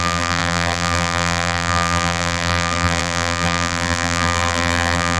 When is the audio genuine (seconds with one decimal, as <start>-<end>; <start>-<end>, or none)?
none